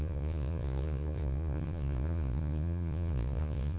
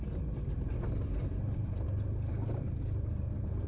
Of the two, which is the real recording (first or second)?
second